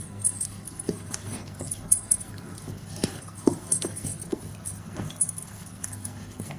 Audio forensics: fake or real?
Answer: fake